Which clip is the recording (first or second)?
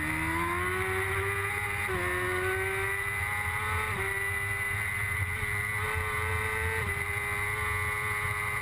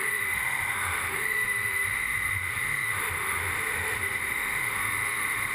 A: first